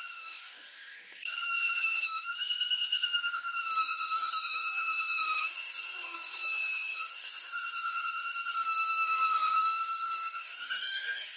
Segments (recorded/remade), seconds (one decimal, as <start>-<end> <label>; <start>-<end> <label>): 0.0-11.4 remade